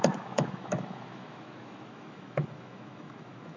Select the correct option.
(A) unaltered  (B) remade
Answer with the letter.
B